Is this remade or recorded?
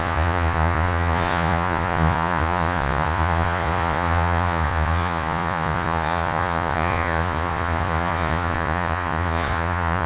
remade